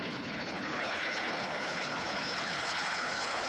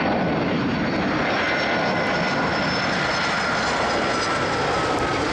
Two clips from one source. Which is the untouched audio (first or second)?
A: second